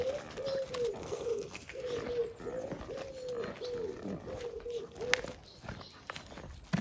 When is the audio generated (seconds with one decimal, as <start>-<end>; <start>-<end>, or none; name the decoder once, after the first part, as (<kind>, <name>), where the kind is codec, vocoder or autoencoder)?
1.0-1.8 (codec, SNAC)